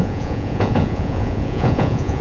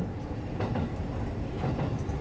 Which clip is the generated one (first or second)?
first